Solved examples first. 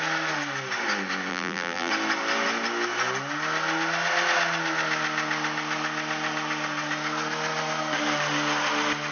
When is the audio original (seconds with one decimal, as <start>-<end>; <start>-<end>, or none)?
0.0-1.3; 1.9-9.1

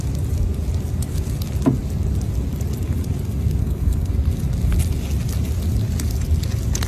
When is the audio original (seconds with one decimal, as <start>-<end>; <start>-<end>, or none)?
0.0-3.6; 4.1-6.9

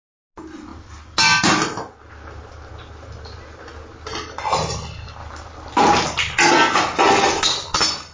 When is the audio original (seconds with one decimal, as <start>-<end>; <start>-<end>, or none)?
0.0-8.1

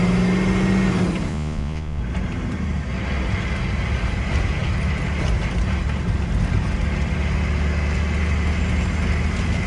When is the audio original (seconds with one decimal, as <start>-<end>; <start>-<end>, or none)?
0.0-1.3; 2.0-9.7

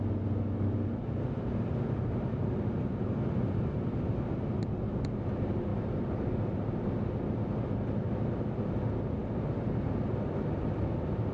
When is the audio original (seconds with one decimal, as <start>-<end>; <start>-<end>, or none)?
0.0-5.7; 6.2-11.3

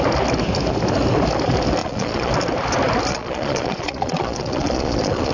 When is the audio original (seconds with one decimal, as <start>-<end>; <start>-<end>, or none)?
0.0-1.8; 2.3-3.1

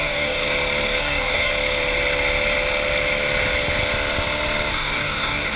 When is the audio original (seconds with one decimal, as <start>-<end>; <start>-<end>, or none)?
0.4-1.0; 1.5-4.7